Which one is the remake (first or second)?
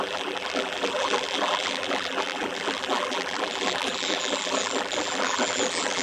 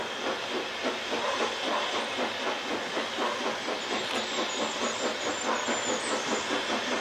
first